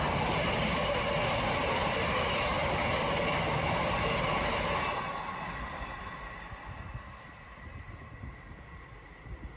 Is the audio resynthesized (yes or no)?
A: no